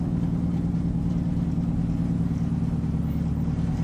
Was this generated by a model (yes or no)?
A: no